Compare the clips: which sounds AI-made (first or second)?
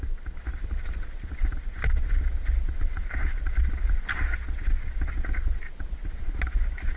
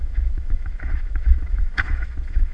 second